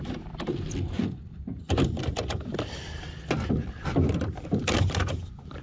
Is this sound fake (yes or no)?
yes